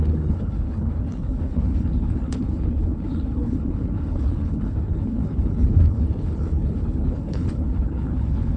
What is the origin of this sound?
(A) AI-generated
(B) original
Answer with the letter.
A